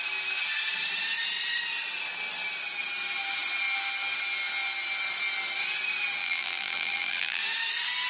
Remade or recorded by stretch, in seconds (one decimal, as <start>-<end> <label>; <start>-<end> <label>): 0.0-6.2 recorded; 6.2-7.4 remade; 7.4-8.1 recorded